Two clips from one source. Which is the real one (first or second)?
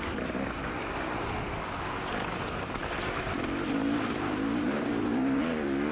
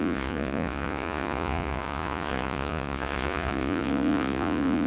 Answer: first